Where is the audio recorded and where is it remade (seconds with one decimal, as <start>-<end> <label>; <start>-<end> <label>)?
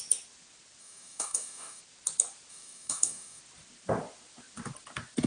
0.0-0.8 recorded; 0.8-1.8 remade; 1.8-2.5 recorded; 2.5-3.4 remade; 3.4-5.3 recorded